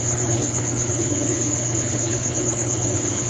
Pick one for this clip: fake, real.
fake